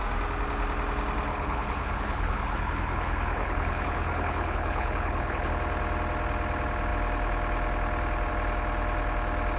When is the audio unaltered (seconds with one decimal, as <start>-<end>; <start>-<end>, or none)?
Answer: 0.0-1.3; 5.5-9.6

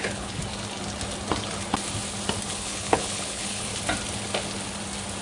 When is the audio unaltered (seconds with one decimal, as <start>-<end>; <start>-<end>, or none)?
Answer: 0.4-2.5; 3.7-5.2